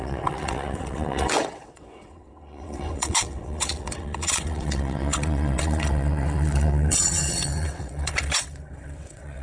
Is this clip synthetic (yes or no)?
yes